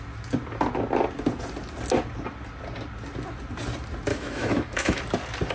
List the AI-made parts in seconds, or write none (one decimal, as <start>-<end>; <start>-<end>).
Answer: 4.1-5.0